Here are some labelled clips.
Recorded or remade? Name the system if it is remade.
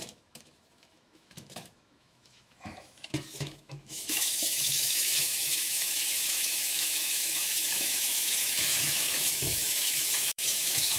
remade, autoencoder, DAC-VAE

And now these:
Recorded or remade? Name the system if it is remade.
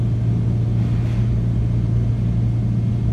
recorded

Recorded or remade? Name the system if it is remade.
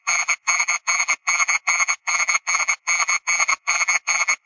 remade, vocoder, BigVGAN v2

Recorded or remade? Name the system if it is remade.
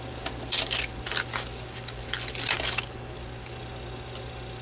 recorded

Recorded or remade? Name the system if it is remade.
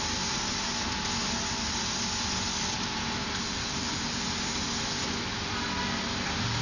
recorded